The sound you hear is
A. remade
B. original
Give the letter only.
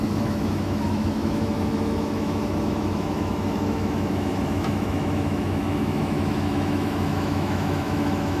A